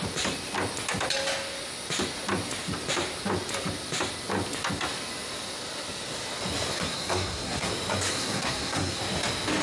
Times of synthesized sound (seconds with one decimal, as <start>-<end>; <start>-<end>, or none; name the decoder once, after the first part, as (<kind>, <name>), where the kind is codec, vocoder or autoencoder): 6.7-7.7 (codec, SNAC); 8.1-9.0